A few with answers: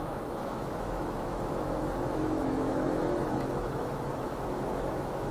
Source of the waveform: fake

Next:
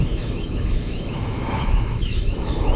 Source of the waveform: fake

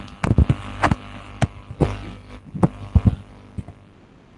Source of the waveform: real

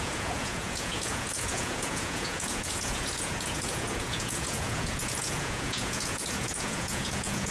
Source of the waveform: fake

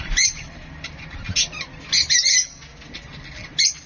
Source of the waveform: real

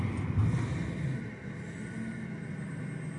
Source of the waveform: real